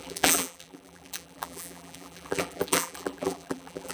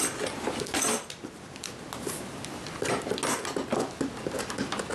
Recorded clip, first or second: second